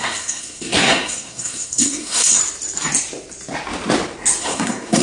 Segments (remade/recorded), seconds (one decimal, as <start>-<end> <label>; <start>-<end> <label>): 0.0-2.4 remade; 2.4-4.4 recorded; 4.4-5.0 remade